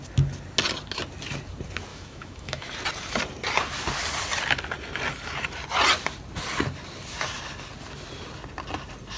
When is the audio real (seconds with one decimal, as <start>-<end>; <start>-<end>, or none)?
0.0-1.9; 2.7-9.2